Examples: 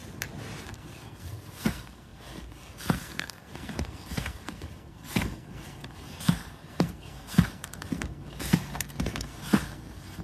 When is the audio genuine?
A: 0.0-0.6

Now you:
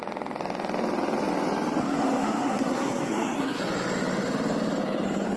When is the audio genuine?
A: 0.0-1.8; 3.6-5.4